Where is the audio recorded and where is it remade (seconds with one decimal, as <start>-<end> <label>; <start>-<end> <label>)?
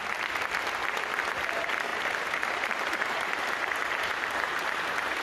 0.0-1.9 recorded; 1.9-5.2 remade